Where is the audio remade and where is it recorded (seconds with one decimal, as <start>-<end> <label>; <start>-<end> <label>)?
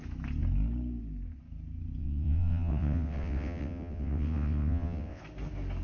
0.0-2.0 recorded; 2.0-5.2 remade; 5.2-5.8 recorded